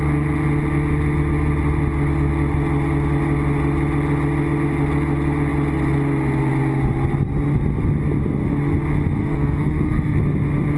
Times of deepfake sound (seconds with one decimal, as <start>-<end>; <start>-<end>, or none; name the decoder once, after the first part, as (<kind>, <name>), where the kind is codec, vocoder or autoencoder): 9.2-10.2 (codec, SNAC)